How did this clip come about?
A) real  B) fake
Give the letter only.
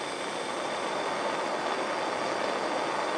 A